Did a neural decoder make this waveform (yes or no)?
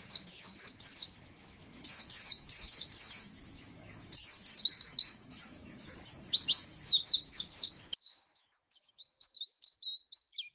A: yes